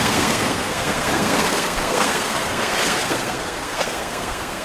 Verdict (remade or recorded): remade